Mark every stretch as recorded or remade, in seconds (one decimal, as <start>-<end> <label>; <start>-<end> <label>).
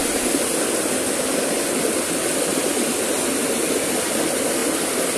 0.0-5.2 recorded